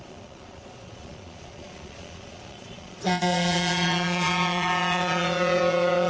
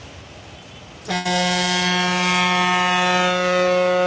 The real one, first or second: second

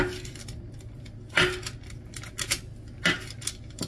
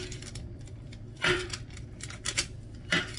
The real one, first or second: first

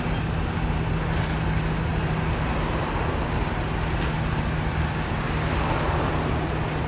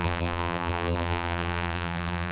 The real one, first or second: first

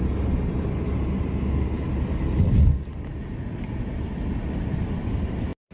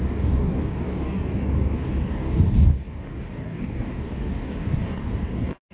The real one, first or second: first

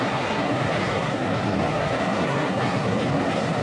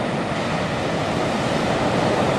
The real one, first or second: second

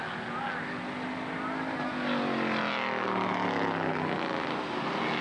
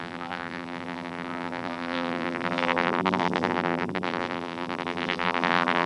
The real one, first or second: first